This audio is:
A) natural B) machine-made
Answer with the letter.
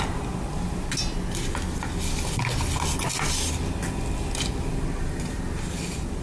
A